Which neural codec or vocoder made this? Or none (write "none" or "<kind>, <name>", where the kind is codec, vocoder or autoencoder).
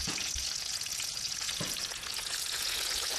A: vocoder, Vocos